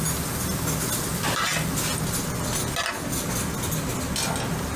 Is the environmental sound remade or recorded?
recorded